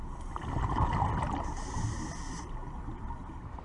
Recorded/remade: recorded